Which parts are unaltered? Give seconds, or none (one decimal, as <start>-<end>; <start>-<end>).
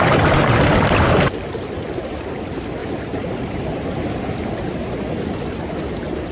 0.0-2.8; 3.6-6.3